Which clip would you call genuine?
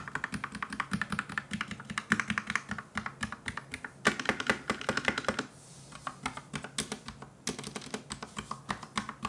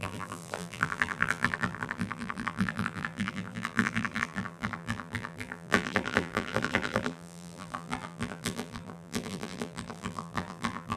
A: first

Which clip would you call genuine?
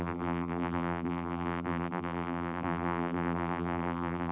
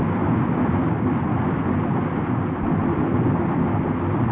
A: second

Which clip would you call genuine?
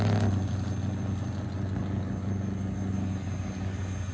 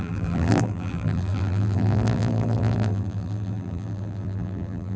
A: first